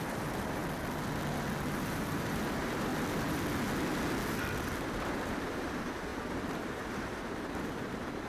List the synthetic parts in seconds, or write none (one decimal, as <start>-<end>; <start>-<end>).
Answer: 0.0-0.6; 1.7-2.9; 4.9-6.1; 7.6-8.3